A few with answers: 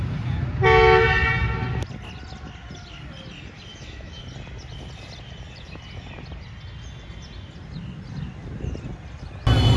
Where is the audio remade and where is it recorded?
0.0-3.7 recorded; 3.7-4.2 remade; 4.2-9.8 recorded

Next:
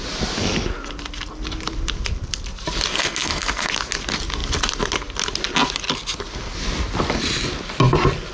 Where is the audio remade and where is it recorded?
0.0-2.9 recorded; 2.9-3.7 remade; 3.7-8.3 recorded

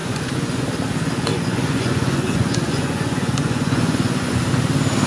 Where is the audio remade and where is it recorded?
0.0-0.6 remade; 0.6-1.3 recorded; 1.3-4.4 remade; 4.4-5.1 recorded

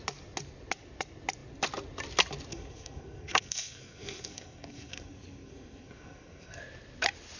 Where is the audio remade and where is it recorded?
0.0-2.5 recorded; 2.5-6.6 remade; 6.6-7.4 recorded

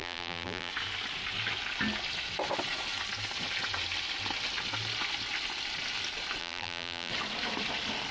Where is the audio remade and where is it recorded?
0.0-0.7 remade; 0.7-6.4 recorded; 6.4-7.1 remade; 7.1-8.1 recorded

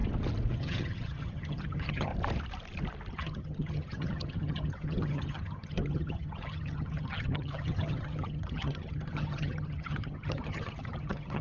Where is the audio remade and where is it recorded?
0.0-0.5 recorded; 0.5-2.1 remade; 2.1-3.1 recorded; 3.1-11.4 remade

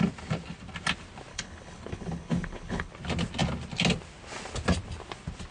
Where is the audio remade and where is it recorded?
0.0-1.3 recorded; 1.3-2.9 remade; 2.9-5.5 recorded

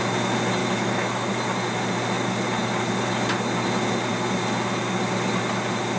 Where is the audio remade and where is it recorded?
0.0-0.6 recorded; 0.6-1.3 remade; 1.3-6.0 recorded